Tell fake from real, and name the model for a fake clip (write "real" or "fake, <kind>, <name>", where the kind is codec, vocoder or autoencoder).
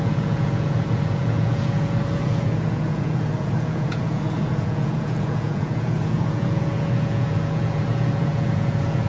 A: fake, vocoder, Vocos